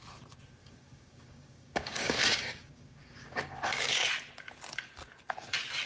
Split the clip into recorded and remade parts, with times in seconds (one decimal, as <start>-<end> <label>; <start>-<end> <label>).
0.0-0.6 recorded; 0.6-4.1 remade; 4.1-5.9 recorded